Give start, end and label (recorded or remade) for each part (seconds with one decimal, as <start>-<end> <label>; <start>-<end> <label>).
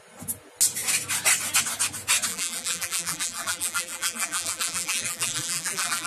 0.0-2.3 recorded; 2.3-6.1 remade